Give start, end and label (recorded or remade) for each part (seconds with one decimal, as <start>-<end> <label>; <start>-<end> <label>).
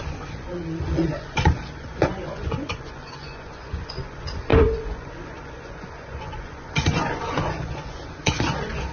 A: 0.0-8.9 remade